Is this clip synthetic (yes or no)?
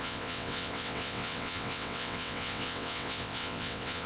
yes